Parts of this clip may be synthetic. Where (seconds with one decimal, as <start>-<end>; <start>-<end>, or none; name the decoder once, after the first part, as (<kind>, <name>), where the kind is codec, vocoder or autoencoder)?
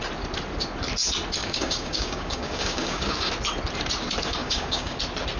1.4-3.3 (codec, DAC); 4.4-5.0